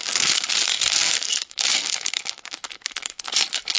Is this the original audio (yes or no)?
no